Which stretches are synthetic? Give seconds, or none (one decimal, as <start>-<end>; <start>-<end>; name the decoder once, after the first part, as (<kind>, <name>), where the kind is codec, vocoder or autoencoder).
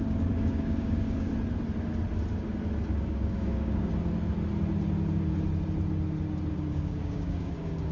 0.0-1.3 (codec, DAC); 2.9-3.9; 6.5-7.9